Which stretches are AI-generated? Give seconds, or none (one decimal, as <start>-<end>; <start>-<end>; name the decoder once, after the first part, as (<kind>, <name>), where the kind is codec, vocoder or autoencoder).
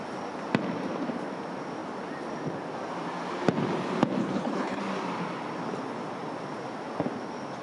4.2-4.8 (codec, HILCodec)